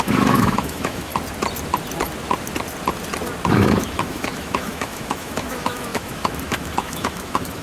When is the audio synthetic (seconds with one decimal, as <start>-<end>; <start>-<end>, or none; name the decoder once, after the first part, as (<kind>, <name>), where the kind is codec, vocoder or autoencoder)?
0.0-1.1 (autoencoder, DAC-VAE); 3.5-7.6